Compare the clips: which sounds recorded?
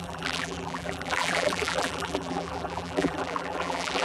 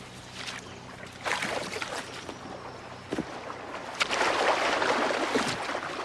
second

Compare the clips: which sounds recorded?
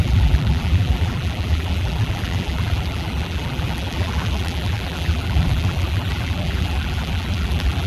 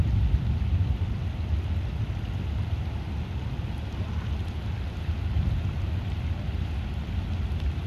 second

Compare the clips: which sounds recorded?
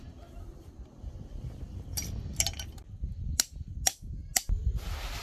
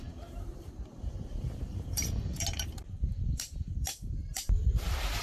first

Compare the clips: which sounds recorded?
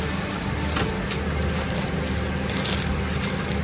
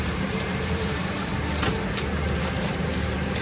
first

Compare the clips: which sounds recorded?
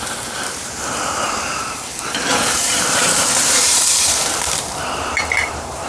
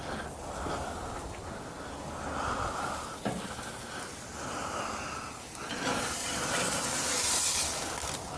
second